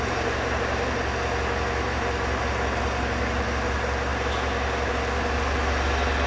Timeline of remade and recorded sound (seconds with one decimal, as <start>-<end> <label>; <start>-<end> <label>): 0.0-6.3 recorded

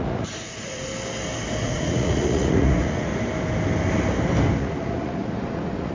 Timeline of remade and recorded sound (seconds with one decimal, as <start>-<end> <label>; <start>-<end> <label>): 0.0-0.9 remade; 0.9-1.6 recorded; 1.6-3.1 remade; 3.1-4.6 recorded; 4.6-5.9 remade

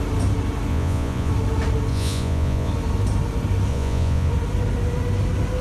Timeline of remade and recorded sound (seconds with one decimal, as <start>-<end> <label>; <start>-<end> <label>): 0.0-0.7 recorded; 0.7-1.3 remade; 1.3-1.9 recorded; 1.9-2.7 remade; 2.7-3.7 recorded; 3.7-4.3 remade; 4.3-5.6 recorded

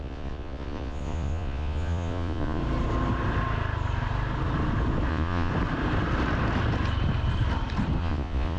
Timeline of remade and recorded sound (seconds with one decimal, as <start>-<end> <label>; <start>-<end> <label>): 0.0-2.6 remade; 2.6-5.1 recorded; 5.1-5.5 remade; 5.5-8.0 recorded; 8.0-8.6 remade

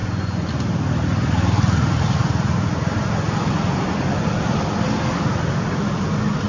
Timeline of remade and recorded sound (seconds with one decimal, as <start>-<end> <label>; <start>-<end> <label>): 0.0-0.5 remade; 0.5-6.5 recorded

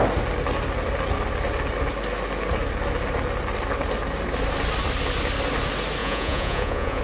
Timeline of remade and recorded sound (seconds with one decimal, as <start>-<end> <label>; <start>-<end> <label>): 0.0-6.0 recorded; 6.0-7.0 remade